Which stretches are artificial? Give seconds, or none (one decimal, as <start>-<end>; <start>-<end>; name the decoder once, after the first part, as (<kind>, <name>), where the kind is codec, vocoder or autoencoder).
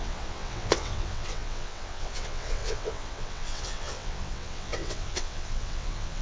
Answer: 0.0-6.2 (vocoder, WaveNeXt)